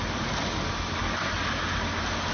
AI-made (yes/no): no